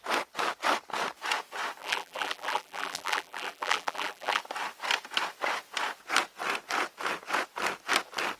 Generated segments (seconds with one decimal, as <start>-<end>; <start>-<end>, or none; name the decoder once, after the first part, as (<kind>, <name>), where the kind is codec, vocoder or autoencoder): 1.8-4.4 (vocoder, BigVGAN v2)